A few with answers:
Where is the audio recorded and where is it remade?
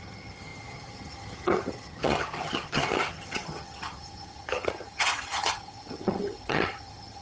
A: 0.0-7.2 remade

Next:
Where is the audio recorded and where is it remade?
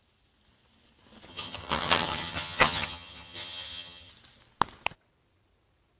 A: 0.0-1.3 recorded; 1.3-4.1 remade; 4.1-6.0 recorded